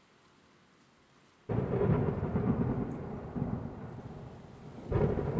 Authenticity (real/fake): real